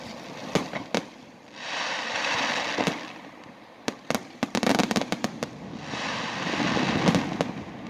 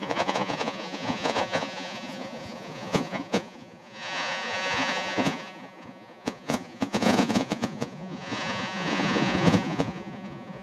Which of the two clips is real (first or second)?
first